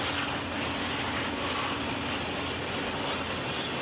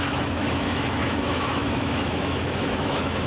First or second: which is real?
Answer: first